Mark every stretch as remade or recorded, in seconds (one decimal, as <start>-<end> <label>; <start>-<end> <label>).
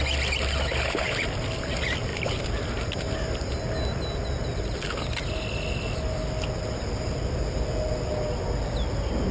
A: 0.0-9.3 recorded